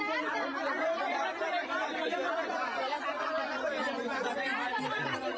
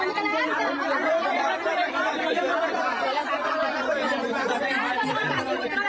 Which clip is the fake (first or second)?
second